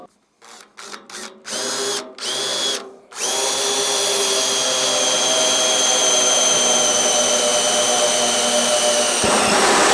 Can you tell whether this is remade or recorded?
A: recorded